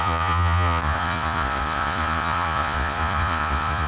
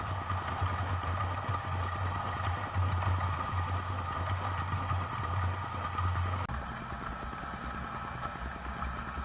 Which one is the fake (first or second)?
first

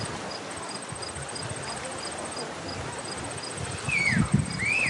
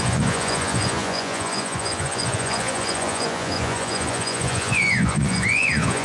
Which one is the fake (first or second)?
second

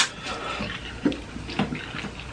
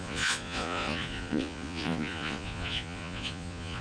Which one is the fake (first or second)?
second